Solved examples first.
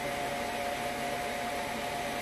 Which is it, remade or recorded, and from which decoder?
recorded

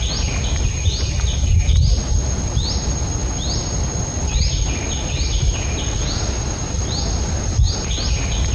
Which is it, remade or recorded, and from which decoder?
recorded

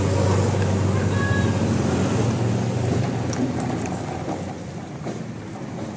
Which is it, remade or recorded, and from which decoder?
recorded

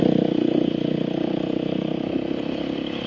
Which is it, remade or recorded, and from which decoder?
recorded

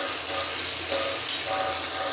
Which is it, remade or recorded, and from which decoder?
recorded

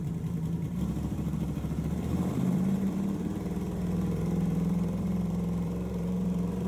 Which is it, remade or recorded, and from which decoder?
remade, vocoder, BigVGAN v2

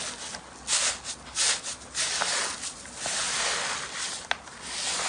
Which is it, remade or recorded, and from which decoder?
recorded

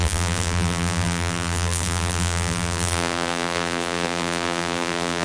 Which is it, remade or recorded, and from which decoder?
remade, vocoder, BigVGAN v2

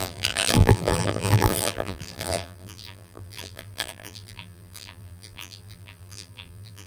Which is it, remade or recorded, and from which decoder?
remade, vocoder, BigVGAN v2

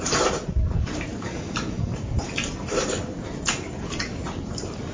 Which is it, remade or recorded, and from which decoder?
remade, vocoder, BigVGAN v2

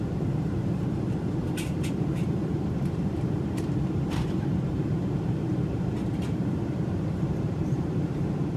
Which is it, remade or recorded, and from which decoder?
remade, vocoder, BigVGAN v2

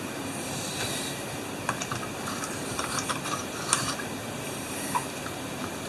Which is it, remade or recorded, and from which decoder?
remade, vocoder, BigVGAN v2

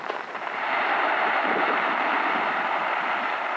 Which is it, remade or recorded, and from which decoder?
remade, vocoder, BigVGAN v2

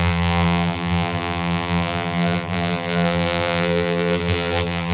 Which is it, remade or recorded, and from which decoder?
remade, vocoder, BigVGAN v2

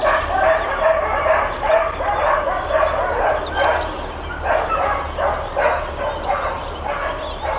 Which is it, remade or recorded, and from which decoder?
recorded